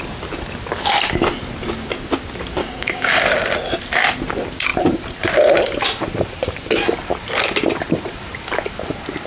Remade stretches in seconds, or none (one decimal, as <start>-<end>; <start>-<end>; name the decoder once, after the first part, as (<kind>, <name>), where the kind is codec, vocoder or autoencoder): 2.6-3.2 (codec, DAC)